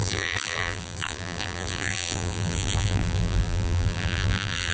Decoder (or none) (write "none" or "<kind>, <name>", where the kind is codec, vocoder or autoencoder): vocoder, BigVGAN v2